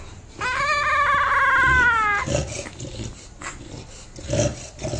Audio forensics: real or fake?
real